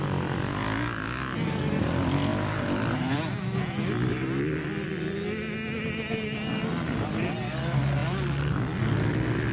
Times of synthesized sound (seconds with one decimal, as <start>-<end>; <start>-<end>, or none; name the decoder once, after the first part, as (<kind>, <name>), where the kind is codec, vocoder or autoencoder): none